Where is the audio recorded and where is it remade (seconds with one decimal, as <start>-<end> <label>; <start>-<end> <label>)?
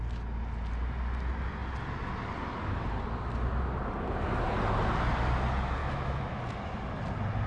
0.0-5.8 recorded; 5.8-6.4 remade; 6.4-7.5 recorded